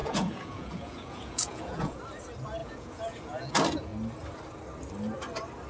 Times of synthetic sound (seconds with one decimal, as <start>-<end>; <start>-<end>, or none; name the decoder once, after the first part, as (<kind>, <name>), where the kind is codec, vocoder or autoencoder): 0.0-2.0 (vocoder, Vocos); 2.6-3.5